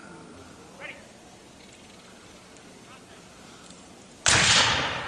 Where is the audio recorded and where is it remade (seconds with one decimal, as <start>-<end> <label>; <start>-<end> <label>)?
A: 0.0-3.1 recorded; 3.1-5.1 remade